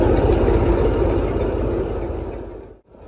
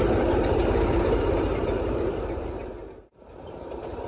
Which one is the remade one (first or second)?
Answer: second